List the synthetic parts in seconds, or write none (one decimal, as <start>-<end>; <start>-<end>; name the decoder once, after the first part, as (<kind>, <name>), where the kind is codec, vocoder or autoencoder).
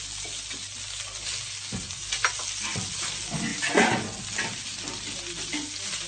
none